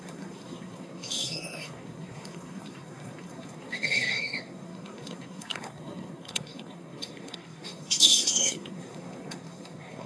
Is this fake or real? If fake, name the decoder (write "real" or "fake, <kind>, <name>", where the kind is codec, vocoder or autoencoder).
fake, codec, SNAC